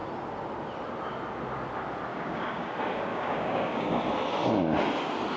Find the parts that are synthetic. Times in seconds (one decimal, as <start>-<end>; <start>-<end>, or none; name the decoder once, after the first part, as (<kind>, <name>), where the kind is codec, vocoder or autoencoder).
2.1-2.7 (codec, DAC); 3.1-4.0